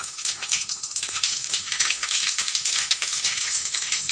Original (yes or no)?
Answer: no